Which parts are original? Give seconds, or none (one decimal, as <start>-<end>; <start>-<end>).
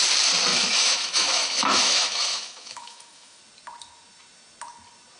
0.0-0.5; 3.4-5.2